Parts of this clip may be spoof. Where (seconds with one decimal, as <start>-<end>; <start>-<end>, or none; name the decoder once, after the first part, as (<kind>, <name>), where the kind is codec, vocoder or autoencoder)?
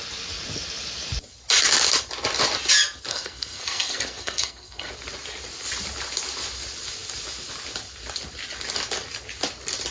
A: 3.1-4.9 (codec, SNAC)